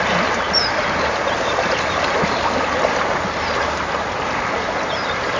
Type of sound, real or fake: real